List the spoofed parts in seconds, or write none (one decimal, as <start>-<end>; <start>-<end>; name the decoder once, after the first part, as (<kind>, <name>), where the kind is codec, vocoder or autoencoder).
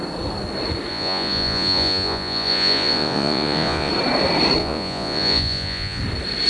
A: 0.9-3.9 (vocoder, Vocos); 4.6-6.0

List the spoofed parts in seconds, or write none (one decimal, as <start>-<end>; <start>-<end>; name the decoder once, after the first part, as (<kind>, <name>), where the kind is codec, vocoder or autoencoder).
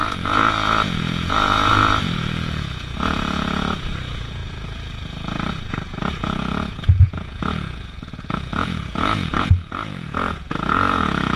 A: 0.0-11.4 (vocoder, Vocos)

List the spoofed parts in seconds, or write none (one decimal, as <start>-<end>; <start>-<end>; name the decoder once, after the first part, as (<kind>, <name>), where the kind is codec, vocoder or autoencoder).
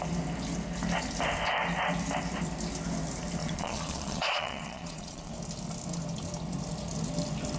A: 3.4-5.3 (vocoder, Vocos)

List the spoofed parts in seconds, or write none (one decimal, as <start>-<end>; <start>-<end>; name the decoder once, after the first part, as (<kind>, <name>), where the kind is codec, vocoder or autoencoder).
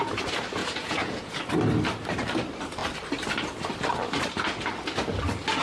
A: 0.6-1.4 (vocoder, Vocos)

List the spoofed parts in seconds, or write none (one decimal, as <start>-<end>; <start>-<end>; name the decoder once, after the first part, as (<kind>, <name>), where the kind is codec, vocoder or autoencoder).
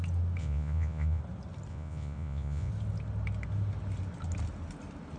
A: 0.4-1.2 (vocoder, Vocos); 1.7-2.7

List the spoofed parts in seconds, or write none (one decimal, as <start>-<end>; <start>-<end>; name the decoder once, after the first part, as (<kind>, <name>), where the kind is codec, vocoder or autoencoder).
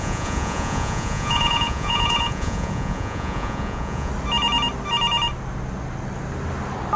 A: 0.0-4.1 (vocoder, Vocos)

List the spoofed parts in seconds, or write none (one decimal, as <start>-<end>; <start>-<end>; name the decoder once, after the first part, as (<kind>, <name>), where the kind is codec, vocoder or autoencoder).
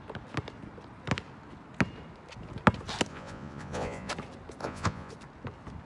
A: 3.1-4.1 (vocoder, Vocos); 4.6-5.1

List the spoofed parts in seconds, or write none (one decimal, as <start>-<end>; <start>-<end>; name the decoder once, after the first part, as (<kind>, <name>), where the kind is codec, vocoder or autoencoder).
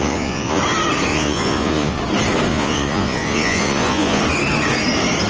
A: 0.0-0.6 (vocoder, Vocos); 1.1-2.0; 2.5-4.2